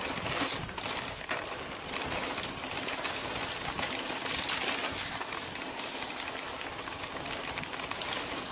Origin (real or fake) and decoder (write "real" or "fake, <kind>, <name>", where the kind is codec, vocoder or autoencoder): real